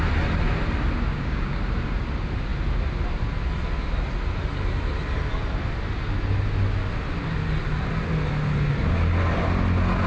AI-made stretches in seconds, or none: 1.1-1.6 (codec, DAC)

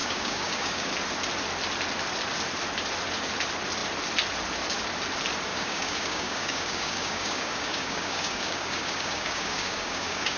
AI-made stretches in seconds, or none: 0.0-0.9 (codec, DAC); 5.5-10.4

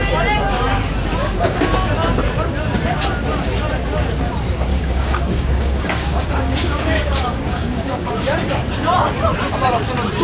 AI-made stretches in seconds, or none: 1.2-1.9 (codec, DAC); 4.7-8.1

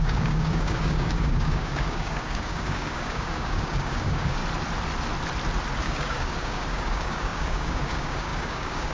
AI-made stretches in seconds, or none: 0.0-4.4 (codec, DAC); 5.8-8.9

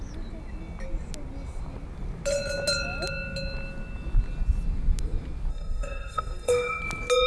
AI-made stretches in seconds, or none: 5.5-6.8 (codec, DAC)

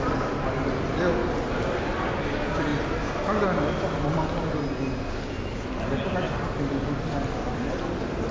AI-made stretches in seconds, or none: none

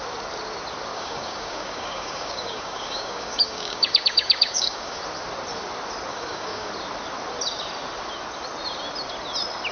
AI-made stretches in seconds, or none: 0.9-5.0 (codec, DAC); 6.1-6.7

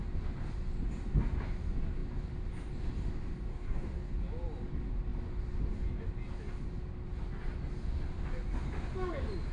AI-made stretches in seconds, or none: 3.5-4.1 (codec, DAC)